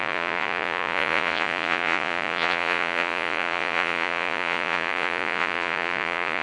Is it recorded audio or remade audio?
remade